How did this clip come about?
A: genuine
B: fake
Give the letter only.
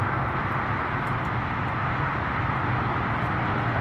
A